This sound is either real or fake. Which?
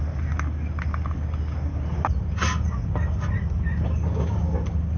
real